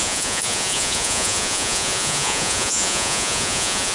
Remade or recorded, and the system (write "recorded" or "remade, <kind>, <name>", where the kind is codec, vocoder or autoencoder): remade, vocoder, Vocos